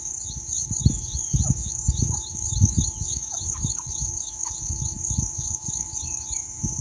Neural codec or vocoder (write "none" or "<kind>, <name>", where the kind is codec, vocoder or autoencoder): autoencoder, DAC-VAE